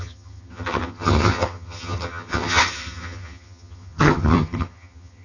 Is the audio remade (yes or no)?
yes